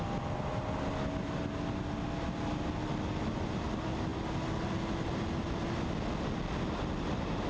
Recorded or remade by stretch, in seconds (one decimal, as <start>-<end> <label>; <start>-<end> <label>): 0.0-7.5 recorded